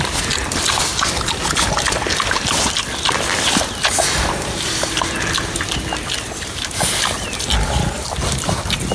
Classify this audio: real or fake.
real